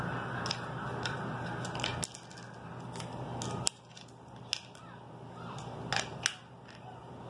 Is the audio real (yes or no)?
yes